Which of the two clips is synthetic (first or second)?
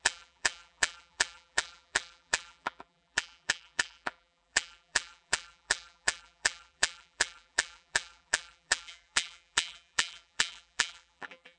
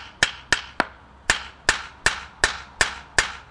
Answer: first